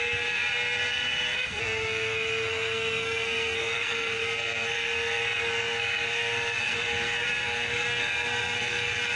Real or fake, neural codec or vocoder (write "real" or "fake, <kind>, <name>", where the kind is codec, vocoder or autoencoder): fake, codec, SNAC